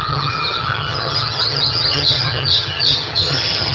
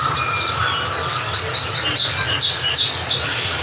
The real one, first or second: second